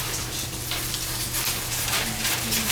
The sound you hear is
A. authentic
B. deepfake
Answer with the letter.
A